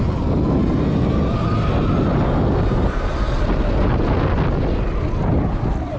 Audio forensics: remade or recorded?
recorded